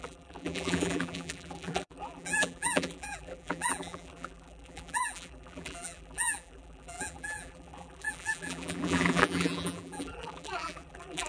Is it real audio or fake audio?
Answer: fake